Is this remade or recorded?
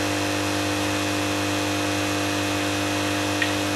recorded